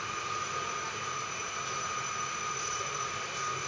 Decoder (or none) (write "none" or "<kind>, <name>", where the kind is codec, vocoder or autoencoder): none